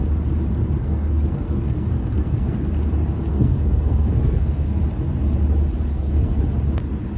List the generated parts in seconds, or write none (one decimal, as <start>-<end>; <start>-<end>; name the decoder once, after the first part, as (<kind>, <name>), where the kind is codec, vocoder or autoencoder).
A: 0.8-2.7 (codec, SNAC); 3.3-4.8; 5.9-6.4